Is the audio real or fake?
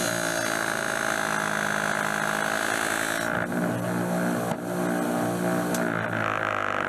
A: real